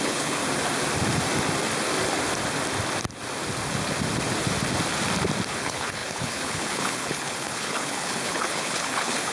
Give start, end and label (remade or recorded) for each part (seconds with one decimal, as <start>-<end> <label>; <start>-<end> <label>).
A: 0.0-0.4 remade; 0.4-5.5 recorded; 5.5-9.3 remade

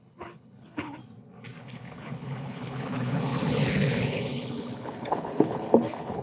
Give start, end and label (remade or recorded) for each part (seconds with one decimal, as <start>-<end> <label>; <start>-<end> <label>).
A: 0.0-1.0 remade; 1.0-1.6 recorded; 1.6-6.2 remade

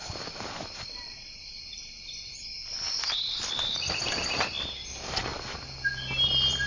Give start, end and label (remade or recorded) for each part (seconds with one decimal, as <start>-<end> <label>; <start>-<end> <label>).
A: 0.0-6.7 recorded

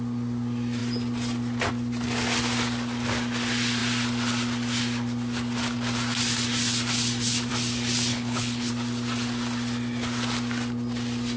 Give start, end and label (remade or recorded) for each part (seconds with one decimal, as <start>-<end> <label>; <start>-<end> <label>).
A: 0.0-8.1 recorded; 8.1-8.7 remade; 8.7-11.4 recorded

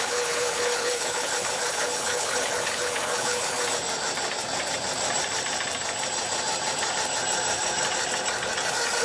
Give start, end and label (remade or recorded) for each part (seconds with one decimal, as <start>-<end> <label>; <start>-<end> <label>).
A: 0.0-3.5 remade; 3.5-9.0 recorded

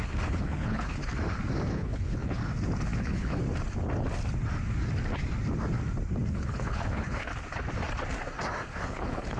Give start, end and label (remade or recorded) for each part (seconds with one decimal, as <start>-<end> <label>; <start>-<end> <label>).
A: 0.0-1.0 remade; 1.0-1.7 recorded; 1.7-2.4 remade; 2.4-3.0 recorded; 3.0-3.4 remade; 3.4-6.3 recorded; 6.3-7.3 remade; 7.3-8.8 recorded; 8.8-9.4 remade

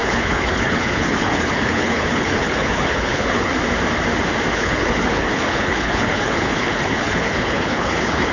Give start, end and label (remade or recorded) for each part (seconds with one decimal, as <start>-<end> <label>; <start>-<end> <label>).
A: 0.0-3.5 remade; 3.5-4.5 recorded; 4.5-8.3 remade